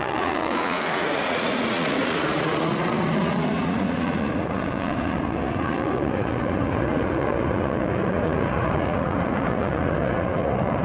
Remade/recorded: remade